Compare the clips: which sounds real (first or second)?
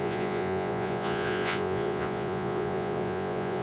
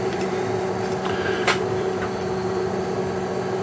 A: second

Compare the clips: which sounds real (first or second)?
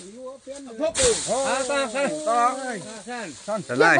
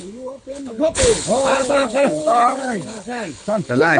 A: first